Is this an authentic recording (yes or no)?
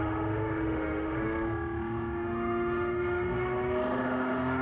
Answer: no